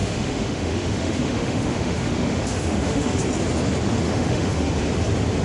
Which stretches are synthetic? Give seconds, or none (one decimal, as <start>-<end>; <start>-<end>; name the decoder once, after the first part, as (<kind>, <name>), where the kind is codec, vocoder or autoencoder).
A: 0.0-3.2 (autoencoder, DAC-VAE); 4.0-4.7